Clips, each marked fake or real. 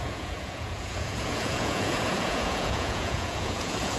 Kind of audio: fake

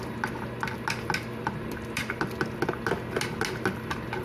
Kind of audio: real